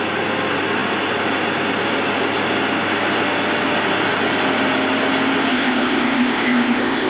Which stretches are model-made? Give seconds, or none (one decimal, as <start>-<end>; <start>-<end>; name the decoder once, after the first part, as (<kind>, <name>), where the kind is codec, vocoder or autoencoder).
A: 5.5-7.1 (codec, ZipCodec)